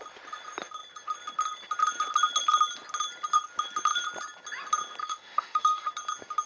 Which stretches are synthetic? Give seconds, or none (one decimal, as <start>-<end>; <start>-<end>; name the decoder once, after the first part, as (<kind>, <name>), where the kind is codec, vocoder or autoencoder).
5.0-5.9 (autoencoder, DAC-VAE)